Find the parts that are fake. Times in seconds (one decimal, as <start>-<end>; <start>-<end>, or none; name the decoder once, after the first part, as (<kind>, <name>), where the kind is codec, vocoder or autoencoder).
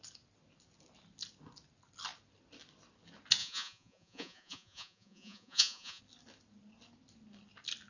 3.4-6.0 (vocoder, Vocos)